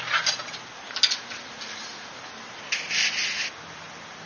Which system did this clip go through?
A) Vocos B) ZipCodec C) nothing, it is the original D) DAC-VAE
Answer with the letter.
C